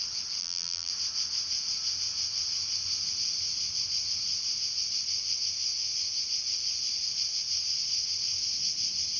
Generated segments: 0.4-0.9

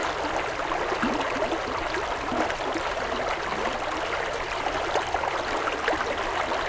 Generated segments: none

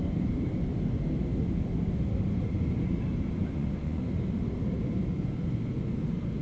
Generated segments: 3.4-4.0

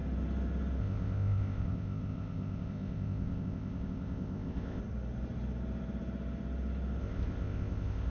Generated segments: 0.8-4.8; 7.0-8.1

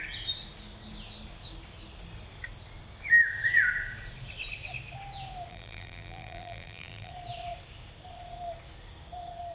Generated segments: 5.5-7.1